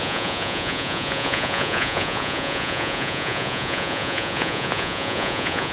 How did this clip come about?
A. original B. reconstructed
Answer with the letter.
B